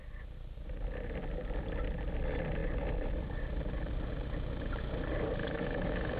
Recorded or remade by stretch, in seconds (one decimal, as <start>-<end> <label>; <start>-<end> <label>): 0.0-5.4 recorded; 5.4-6.2 remade